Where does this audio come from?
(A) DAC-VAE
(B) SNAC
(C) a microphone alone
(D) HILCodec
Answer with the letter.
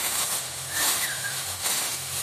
A